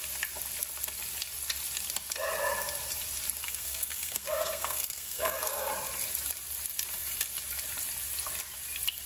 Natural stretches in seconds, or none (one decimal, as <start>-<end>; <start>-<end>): 0.0-3.4; 5.7-9.1